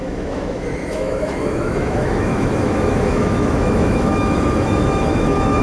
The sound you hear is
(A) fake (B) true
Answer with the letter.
A